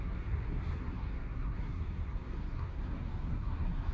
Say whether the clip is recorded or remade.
remade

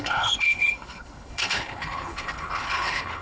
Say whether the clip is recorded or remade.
remade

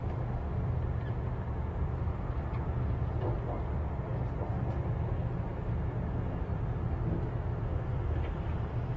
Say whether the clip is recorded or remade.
recorded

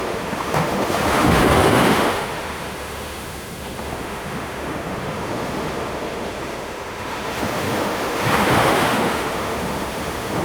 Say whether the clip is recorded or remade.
remade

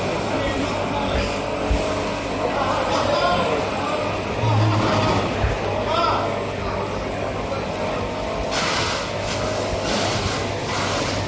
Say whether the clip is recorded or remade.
recorded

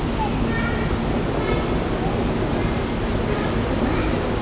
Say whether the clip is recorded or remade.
recorded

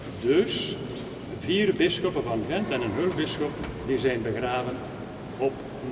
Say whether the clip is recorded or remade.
recorded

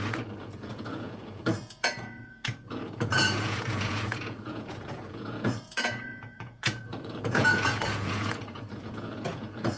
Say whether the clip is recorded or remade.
remade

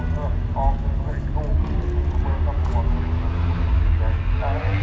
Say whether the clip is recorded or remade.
recorded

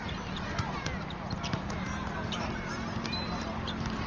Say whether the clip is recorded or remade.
remade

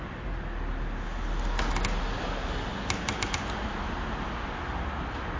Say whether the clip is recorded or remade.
recorded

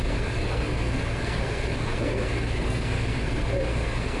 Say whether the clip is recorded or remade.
remade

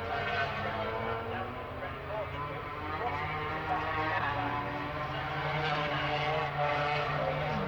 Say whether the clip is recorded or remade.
recorded